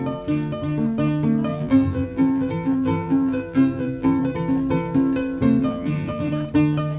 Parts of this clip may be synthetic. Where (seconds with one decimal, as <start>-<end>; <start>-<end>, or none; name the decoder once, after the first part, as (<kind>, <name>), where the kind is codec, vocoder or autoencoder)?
1.5-4.2 (vocoder, BigVGAN v2); 5.6-6.3